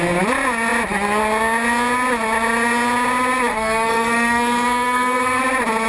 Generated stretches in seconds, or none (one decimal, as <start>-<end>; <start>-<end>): 3.5-5.4